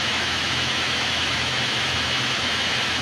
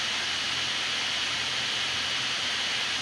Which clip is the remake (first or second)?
first